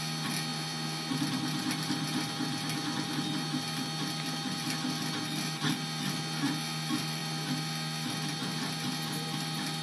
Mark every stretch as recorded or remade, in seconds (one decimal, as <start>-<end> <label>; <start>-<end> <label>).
0.0-9.8 recorded